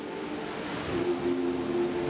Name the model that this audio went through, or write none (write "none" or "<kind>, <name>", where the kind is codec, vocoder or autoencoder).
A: vocoder, BigVGAN v2